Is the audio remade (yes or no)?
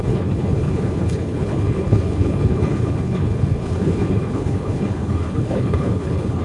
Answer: yes